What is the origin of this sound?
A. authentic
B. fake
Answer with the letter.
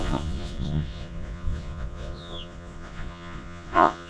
B